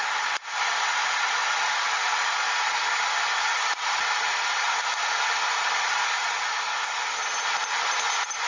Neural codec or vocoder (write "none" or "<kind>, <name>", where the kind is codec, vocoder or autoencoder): none